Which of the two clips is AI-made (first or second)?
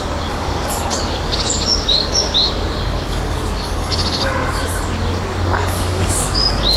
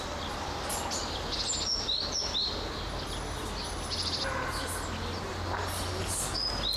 first